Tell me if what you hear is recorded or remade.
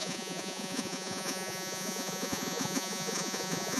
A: remade